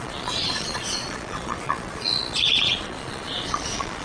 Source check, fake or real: fake